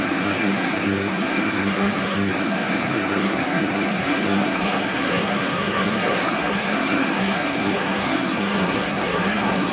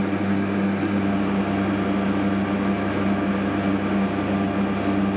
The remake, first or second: first